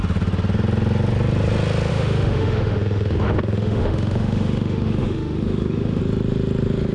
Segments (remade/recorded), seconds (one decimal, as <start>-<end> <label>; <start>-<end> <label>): 0.0-1.9 recorded; 1.9-6.0 remade; 6.0-6.9 recorded